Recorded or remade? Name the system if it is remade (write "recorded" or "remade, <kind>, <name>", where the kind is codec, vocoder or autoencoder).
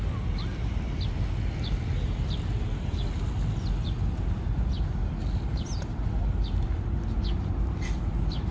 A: recorded